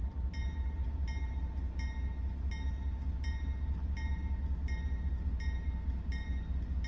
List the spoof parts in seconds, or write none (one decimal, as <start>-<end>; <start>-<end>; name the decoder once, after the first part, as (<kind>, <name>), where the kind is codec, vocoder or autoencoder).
none